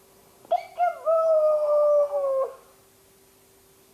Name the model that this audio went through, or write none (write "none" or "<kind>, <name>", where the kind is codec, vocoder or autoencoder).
none